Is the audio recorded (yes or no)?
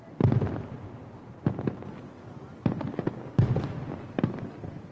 yes